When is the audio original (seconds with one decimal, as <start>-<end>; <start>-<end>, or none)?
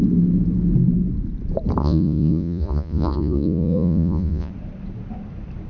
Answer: 0.0-1.8; 4.5-5.7